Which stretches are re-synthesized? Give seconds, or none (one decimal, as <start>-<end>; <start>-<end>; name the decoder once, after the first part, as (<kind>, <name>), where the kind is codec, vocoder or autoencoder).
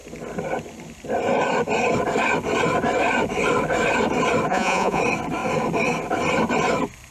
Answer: 4.5-5.0 (vocoder, Vocos)